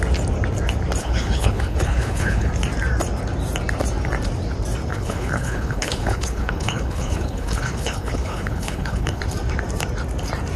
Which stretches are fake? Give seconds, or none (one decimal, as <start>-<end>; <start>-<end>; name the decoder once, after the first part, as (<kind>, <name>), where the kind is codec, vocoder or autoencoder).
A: 1.0-2.5 (codec, HILCodec); 4.9-9.2